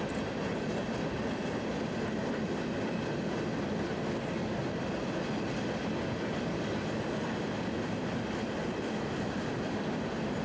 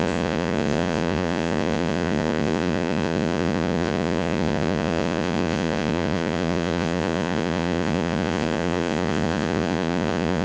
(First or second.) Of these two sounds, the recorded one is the first